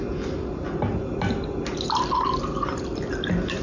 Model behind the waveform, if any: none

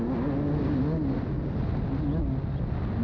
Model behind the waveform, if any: none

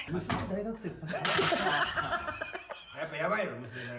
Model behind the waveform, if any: none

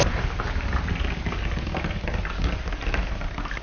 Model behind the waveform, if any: none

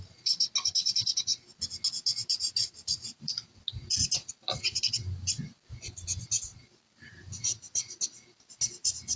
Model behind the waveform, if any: none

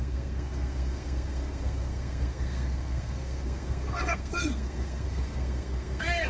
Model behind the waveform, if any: codec, SNAC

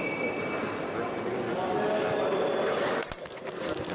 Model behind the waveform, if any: none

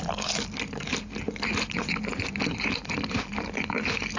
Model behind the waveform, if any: vocoder, BigVGAN v2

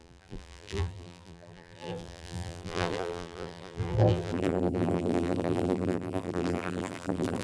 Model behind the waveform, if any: vocoder, BigVGAN v2